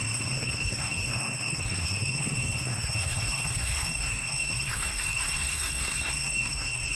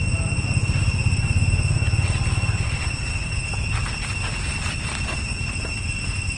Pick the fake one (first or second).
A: first